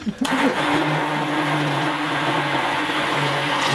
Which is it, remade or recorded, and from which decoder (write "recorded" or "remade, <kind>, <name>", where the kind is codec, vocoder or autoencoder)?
remade, vocoder, Vocos